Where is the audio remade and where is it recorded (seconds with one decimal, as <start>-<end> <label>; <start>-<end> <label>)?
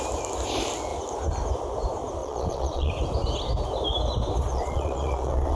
0.0-2.2 recorded; 2.2-2.9 remade; 2.9-4.5 recorded; 4.5-5.6 remade